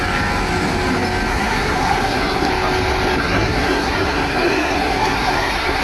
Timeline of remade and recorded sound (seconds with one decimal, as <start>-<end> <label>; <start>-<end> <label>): 0.0-1.3 recorded; 1.3-2.5 remade; 2.5-3.2 recorded; 3.2-5.8 remade